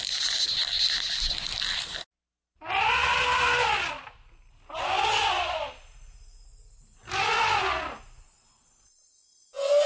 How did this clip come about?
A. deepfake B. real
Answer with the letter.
B